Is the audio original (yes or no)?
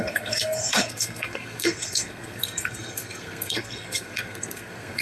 no